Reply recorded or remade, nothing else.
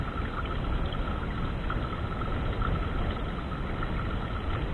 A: recorded